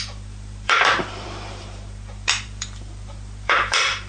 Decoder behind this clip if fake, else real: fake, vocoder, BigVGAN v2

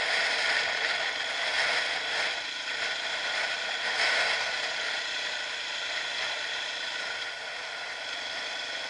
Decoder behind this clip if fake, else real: real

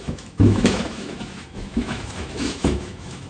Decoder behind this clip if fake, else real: fake, autoencoder, DAC-VAE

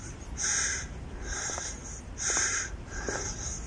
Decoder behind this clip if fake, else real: real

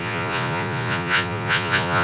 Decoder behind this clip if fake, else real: fake, vocoder, Vocos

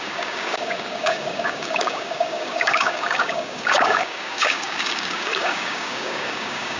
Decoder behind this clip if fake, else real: fake, codec, DAC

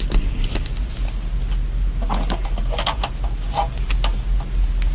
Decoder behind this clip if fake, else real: real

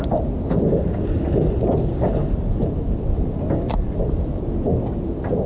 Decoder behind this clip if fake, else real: real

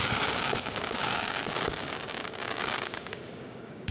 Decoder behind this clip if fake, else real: fake, codec, DAC